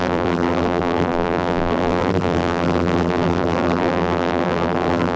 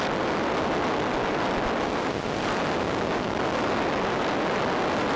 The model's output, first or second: first